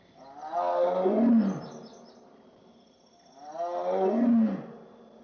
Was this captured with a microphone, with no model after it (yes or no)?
yes